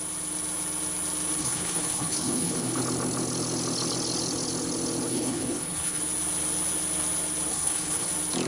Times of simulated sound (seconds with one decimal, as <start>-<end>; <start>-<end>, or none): 1.4-2.8; 5.1-6.0; 7.5-8.1